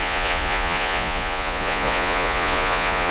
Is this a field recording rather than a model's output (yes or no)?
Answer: no